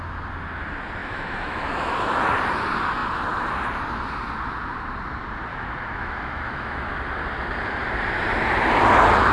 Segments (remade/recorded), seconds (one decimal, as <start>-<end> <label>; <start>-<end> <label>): 0.0-1.0 recorded; 1.0-2.1 remade; 2.1-5.5 recorded; 5.5-6.9 remade; 6.9-9.3 recorded